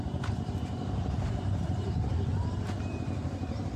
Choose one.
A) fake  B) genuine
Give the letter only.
A